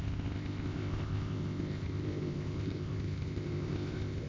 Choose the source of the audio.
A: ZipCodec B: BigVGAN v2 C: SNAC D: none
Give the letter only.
A